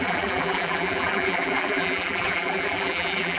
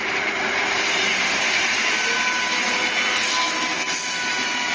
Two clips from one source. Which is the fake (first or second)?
first